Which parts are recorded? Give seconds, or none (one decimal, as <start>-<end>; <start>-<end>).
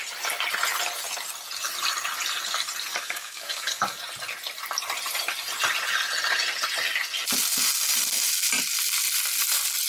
0.0-2.9; 4.0-9.9